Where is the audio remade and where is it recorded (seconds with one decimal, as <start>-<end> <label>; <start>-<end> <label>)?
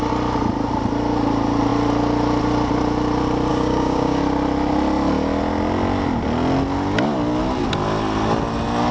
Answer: 0.0-3.5 recorded; 3.5-4.2 remade; 4.2-8.9 recorded